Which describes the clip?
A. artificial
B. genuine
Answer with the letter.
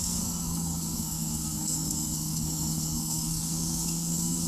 A